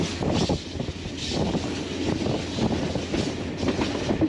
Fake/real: real